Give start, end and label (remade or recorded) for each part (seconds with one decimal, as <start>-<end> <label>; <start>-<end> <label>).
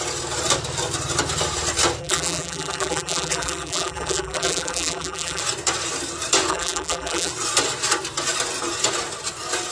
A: 0.0-2.0 recorded; 2.0-5.4 remade; 5.4-6.5 recorded; 6.5-7.3 remade; 7.3-9.7 recorded